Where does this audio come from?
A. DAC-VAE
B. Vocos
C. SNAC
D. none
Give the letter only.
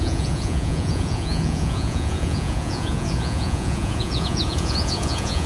B